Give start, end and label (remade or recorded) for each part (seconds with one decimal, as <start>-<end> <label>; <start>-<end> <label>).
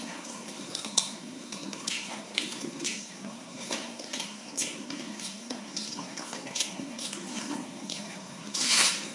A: 0.0-9.1 remade